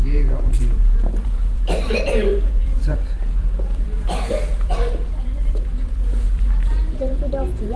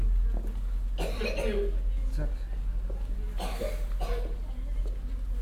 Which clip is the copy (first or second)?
first